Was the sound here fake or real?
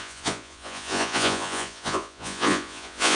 fake